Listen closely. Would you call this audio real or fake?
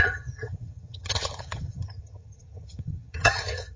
fake